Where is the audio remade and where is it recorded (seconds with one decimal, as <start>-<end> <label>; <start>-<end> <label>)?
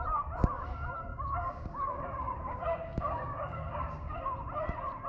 0.0-1.1 recorded; 1.1-4.2 remade; 4.2-5.1 recorded